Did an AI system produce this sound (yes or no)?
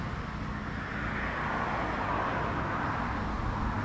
no